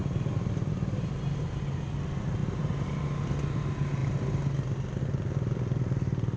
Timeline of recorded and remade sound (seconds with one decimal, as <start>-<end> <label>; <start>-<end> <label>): 0.0-6.4 recorded